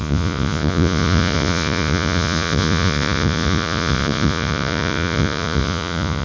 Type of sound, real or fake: fake